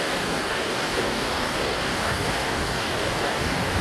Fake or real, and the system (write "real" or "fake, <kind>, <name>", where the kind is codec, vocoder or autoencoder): fake, codec, DAC